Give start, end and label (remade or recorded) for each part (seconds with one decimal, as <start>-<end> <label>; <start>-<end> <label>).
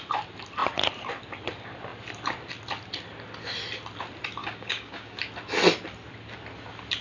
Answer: 0.0-4.4 recorded; 4.4-5.2 remade; 5.2-7.0 recorded